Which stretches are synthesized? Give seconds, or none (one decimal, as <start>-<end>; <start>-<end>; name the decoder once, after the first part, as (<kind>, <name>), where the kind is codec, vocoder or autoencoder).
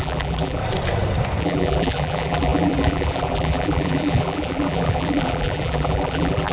0.0-0.6 (vocoder, BigVGAN v2); 1.4-6.5